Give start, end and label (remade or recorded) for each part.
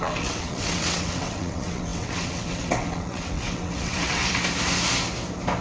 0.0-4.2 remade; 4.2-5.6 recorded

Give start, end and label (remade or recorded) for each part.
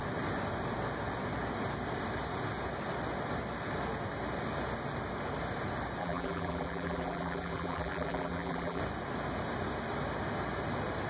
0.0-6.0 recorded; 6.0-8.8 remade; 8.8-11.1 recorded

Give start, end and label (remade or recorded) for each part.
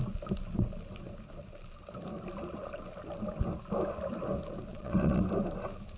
0.0-4.7 recorded; 4.7-5.2 remade; 5.2-6.0 recorded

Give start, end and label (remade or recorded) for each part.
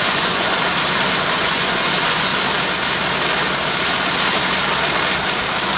0.0-0.6 remade; 0.6-1.1 recorded; 1.1-2.3 remade; 2.3-5.8 recorded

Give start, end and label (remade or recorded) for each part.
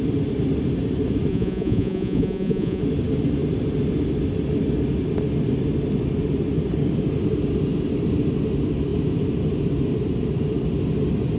0.0-1.3 recorded; 1.3-2.8 remade; 2.8-11.4 recorded